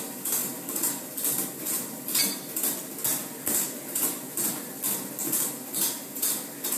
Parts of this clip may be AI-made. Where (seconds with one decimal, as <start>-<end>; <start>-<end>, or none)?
none